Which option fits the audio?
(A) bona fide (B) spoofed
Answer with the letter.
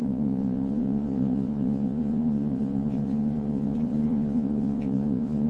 B